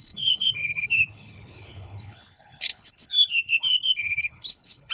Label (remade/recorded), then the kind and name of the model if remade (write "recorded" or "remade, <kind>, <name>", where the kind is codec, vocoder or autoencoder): remade, codec, HILCodec